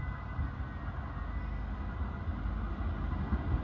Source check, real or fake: real